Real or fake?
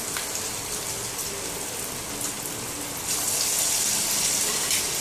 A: real